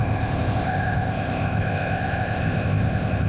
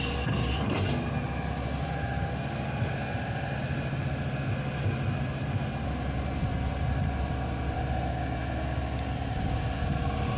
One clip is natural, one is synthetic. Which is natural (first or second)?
second